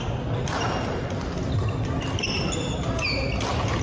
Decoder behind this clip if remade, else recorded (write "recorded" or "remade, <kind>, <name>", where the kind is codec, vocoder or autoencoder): recorded